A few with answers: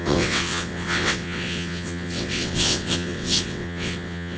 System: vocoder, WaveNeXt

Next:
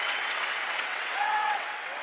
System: vocoder, WaveNeXt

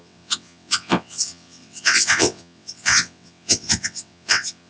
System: vocoder, WaveNeXt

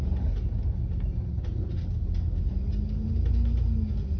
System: none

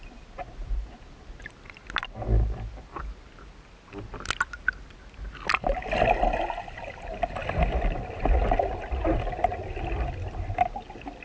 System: none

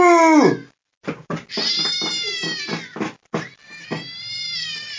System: none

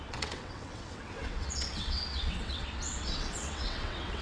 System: vocoder, WaveNeXt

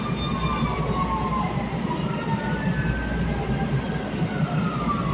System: none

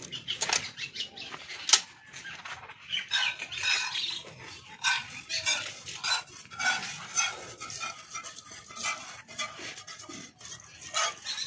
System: none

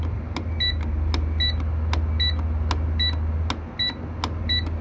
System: none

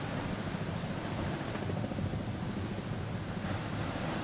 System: none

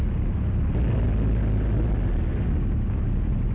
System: none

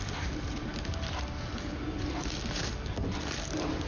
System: none